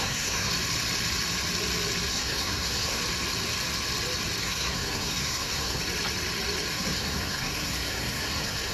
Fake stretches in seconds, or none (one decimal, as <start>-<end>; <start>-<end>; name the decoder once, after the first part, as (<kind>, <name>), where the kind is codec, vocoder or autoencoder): 0.0-0.5 (codec, SNAC); 2.1-3.0; 4.4-5.8; 6.7-8.7